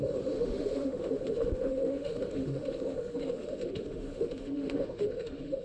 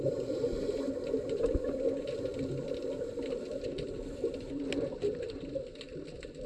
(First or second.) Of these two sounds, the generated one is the first